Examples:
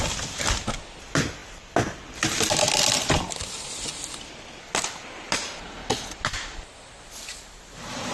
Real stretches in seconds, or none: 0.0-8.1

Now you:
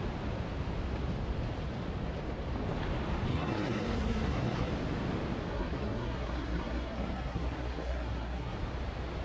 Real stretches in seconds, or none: 0.0-3.3; 4.7-5.5; 8.6-9.2